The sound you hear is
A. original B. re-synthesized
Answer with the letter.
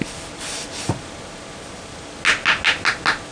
A